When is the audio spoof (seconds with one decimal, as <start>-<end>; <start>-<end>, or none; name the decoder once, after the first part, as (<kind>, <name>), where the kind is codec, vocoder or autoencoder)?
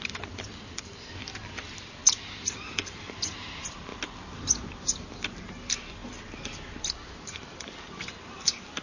0.0-2.0 (vocoder, BigVGAN v2); 2.5-3.9; 5.5-8.8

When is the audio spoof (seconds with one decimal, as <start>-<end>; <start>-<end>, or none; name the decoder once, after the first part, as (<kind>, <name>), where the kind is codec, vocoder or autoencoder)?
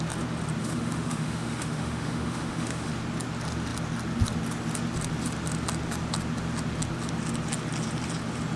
0.6-2.9 (autoencoder, DAC-VAE)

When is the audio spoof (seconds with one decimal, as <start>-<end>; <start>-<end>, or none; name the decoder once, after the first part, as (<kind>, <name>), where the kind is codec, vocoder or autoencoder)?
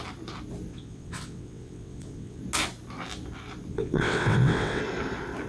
0.7-2.4 (vocoder, WaveNeXt); 3.7-4.8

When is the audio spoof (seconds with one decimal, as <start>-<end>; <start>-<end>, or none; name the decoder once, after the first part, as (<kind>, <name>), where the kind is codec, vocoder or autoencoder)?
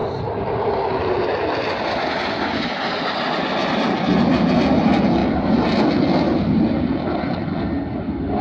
none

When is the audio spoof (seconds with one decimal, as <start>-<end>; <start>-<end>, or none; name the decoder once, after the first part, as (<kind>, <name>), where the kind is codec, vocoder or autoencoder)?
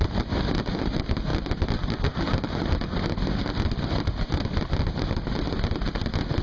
none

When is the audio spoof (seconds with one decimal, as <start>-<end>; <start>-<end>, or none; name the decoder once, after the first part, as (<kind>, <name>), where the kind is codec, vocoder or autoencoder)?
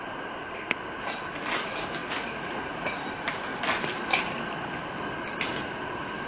2.0-3.0 (vocoder, Vocos)